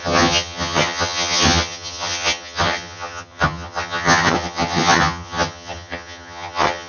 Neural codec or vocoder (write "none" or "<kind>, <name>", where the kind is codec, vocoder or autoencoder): vocoder, HiFi-GAN